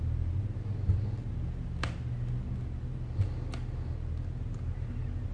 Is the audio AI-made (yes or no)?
no